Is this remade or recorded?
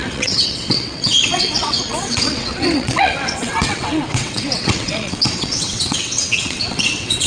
remade